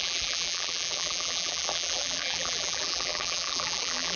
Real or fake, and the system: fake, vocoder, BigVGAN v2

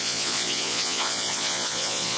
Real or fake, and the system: fake, vocoder, Vocos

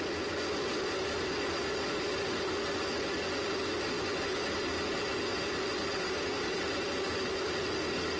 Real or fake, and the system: real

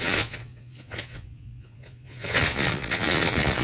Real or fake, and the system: fake, vocoder, Vocos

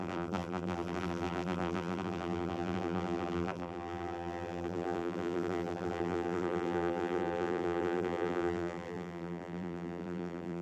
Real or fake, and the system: fake, vocoder, BigVGAN v2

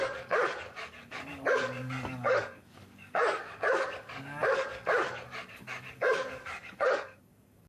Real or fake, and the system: fake, codec, DAC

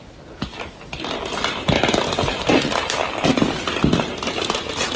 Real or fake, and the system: real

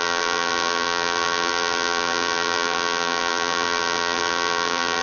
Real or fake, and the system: fake, vocoder, BigVGAN v2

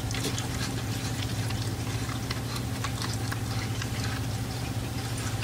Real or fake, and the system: real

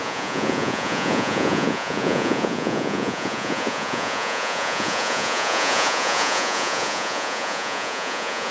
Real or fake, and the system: fake, vocoder, Vocos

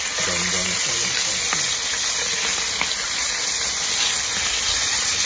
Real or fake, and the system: real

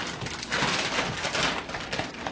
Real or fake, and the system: real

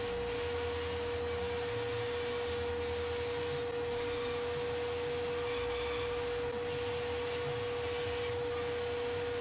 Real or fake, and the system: real